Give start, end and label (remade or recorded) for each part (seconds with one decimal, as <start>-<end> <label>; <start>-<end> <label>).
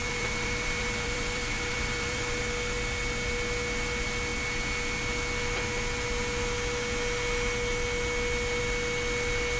0.0-2.4 remade; 2.4-9.6 recorded